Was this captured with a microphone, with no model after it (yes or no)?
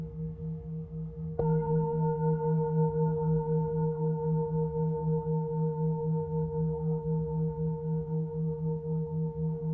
no